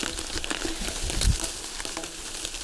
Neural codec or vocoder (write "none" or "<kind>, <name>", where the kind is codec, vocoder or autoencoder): none